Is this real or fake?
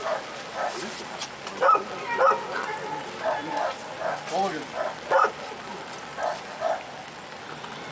real